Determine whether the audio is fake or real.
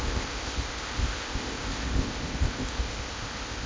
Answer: fake